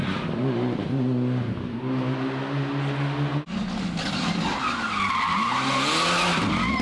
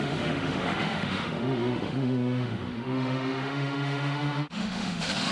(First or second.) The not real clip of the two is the second